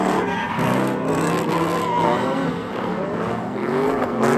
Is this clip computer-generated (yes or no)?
yes